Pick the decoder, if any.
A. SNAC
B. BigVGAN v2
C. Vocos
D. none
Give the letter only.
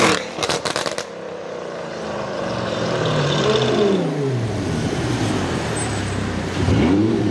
B